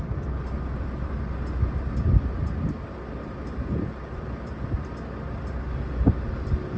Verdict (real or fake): real